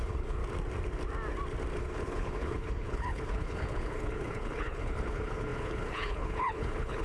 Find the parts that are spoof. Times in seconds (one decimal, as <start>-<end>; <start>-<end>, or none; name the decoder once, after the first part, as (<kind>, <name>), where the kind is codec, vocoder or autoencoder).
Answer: 0.0-0.4 (codec, HILCodec); 1.8-7.0